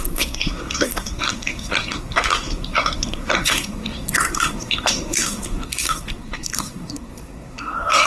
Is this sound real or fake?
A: fake